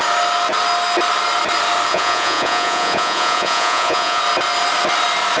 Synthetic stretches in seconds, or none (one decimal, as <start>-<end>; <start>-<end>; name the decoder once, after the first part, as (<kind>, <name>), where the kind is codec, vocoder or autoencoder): 1.9-4.2 (vocoder, Vocos)